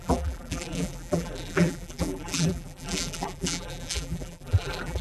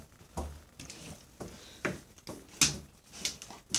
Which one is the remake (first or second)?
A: first